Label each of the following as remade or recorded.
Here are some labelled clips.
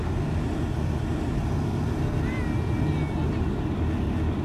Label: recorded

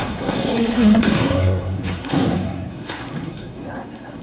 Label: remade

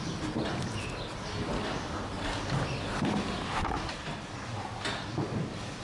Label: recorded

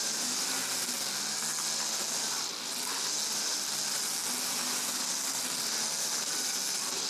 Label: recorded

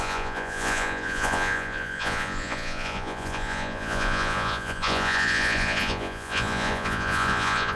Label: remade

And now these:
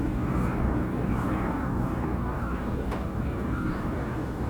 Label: remade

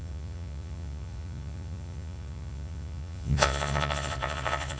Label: remade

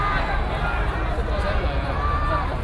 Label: recorded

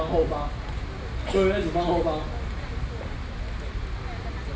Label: recorded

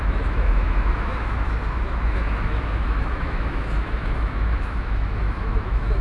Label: remade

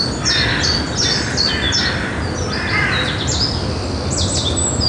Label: recorded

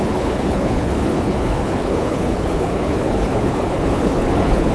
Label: remade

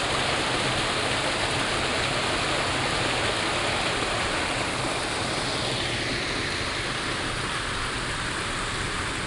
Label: recorded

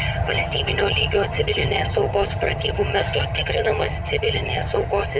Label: remade